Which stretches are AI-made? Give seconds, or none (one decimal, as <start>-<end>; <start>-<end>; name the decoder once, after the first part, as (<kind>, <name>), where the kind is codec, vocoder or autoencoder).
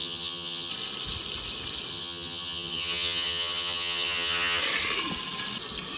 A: 0.0-0.7 (vocoder, HiFi-GAN); 1.9-4.6